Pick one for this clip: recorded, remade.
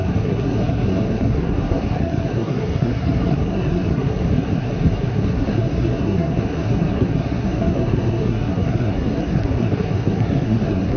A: remade